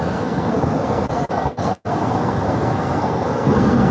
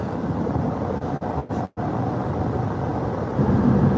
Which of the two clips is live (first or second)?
second